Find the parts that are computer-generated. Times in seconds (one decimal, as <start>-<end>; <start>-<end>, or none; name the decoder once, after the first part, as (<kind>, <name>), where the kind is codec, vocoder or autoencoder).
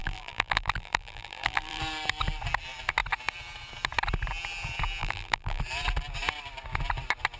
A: 0.0-1.8 (vocoder, BigVGAN v2); 5.0-5.6